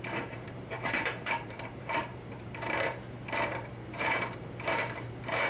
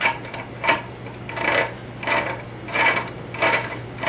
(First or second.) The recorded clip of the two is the second